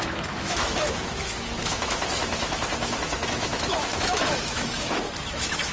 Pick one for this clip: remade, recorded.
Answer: remade